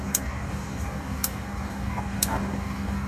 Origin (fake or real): fake